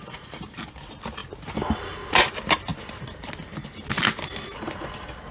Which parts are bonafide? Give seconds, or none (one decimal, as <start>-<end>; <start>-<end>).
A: 0.0-5.3